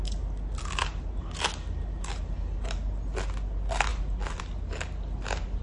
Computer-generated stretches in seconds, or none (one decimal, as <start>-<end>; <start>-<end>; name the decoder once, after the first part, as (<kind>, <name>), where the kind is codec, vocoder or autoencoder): none